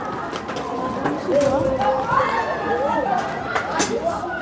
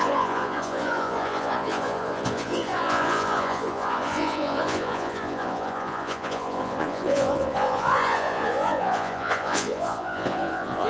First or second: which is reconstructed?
second